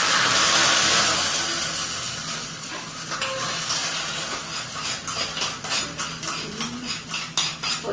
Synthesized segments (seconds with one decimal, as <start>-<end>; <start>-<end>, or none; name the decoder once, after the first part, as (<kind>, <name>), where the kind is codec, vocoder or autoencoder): 0.0-2.9 (vocoder, BigVGAN v2)